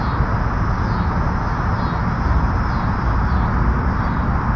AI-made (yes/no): no